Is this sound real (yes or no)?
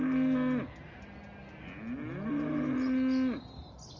yes